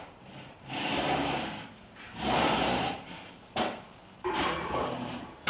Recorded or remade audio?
remade